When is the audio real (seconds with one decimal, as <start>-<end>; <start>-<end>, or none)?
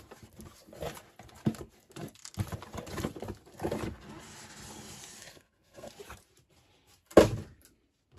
0.0-5.2; 5.9-8.2